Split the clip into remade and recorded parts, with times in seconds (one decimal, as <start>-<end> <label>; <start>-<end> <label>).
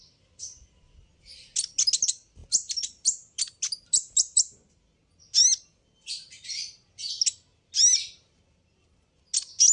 0.0-9.7 recorded